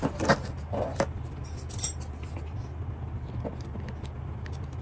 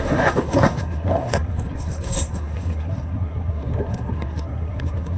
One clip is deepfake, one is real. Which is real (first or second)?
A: first